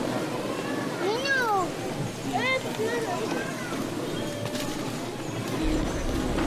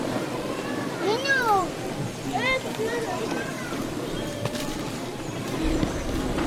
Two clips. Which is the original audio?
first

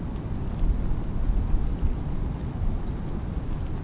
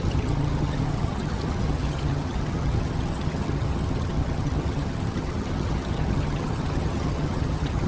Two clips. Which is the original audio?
first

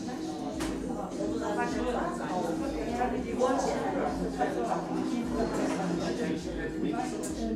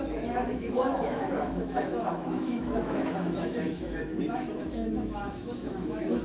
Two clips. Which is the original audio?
first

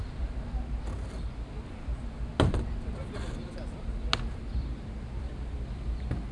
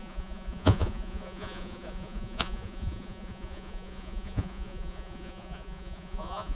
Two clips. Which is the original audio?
first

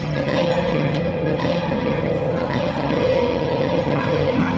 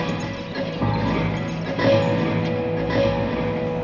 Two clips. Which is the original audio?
second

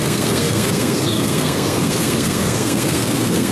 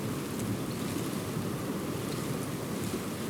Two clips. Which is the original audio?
second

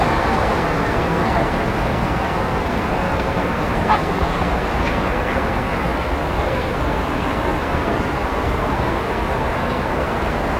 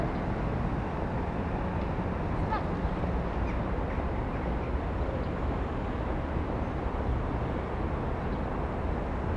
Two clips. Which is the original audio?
second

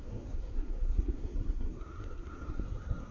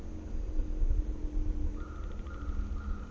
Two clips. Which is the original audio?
second